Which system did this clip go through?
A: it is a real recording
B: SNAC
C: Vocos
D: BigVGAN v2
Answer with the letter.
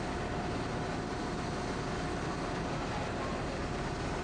A